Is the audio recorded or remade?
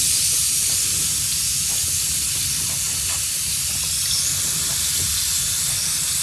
recorded